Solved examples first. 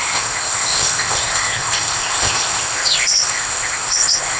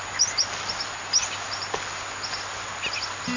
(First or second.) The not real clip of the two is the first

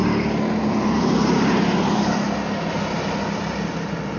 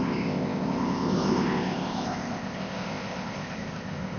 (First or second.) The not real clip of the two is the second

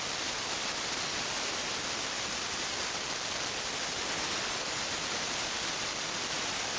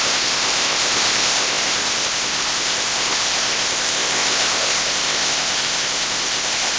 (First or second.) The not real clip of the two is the second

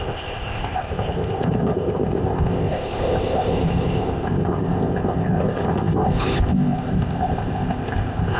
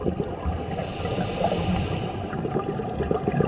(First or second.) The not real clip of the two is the first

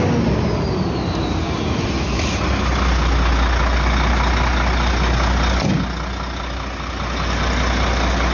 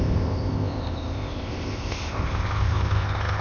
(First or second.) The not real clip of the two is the second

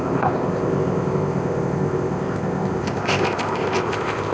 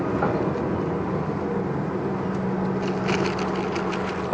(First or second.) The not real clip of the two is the first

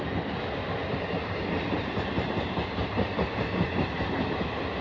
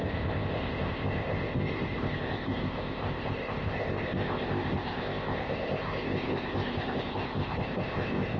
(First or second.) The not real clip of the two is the second